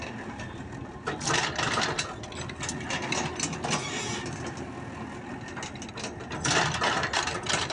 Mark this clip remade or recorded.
recorded